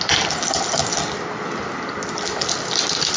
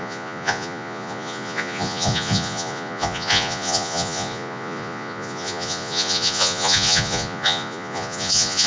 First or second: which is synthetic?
second